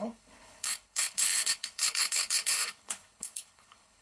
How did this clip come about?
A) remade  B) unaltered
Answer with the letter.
A